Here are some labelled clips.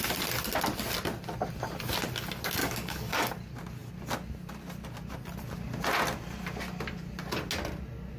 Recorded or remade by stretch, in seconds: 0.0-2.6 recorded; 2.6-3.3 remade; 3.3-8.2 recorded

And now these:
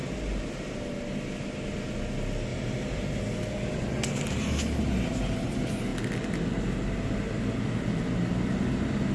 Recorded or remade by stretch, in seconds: 0.0-2.5 recorded; 2.5-3.2 remade; 3.2-9.1 recorded

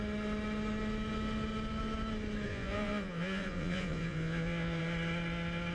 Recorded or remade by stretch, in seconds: 0.0-2.5 recorded; 2.5-4.8 remade; 4.8-5.7 recorded

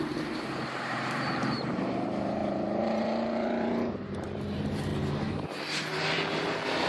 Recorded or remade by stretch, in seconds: 0.0-4.9 remade; 4.9-6.1 recorded; 6.1-6.9 remade

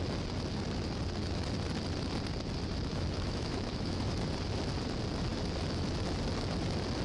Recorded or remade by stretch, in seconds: 0.0-2.9 recorded; 2.9-4.0 remade; 4.0-7.0 recorded

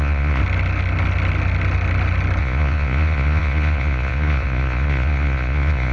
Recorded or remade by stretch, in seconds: 0.0-0.4 remade; 0.4-2.4 recorded; 2.4-5.9 remade